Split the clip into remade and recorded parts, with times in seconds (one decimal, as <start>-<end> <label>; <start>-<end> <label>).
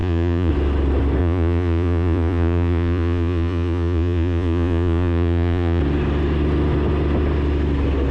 0.0-0.5 remade; 0.5-1.2 recorded; 1.2-5.8 remade; 5.8-8.1 recorded